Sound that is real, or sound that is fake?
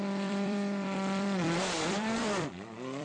fake